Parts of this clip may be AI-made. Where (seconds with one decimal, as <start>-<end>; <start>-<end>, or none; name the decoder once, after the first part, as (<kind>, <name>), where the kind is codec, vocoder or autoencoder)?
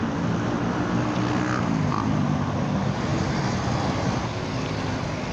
none